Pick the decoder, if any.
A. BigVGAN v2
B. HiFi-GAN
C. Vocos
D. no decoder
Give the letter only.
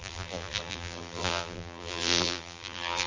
A